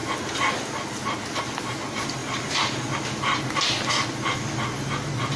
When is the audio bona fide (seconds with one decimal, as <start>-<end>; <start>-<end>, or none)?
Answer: 0.0-5.4